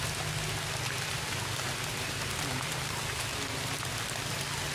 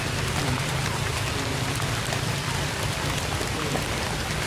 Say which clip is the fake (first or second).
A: second